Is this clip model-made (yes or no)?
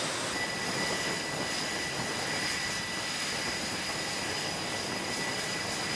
no